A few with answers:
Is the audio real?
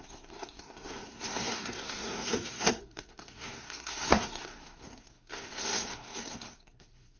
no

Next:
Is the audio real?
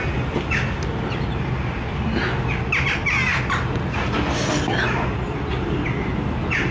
yes